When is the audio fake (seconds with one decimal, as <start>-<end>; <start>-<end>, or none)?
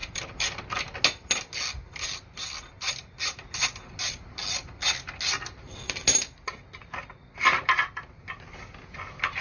none